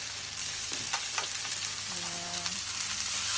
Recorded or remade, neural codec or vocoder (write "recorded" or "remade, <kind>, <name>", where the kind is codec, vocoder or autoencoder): remade, vocoder, BigVGAN v2